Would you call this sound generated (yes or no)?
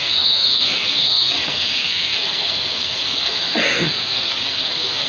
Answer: yes